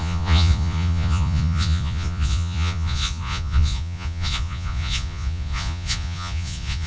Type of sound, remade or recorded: remade